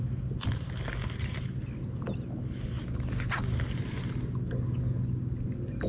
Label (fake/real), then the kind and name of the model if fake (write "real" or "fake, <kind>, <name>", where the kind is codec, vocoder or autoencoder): real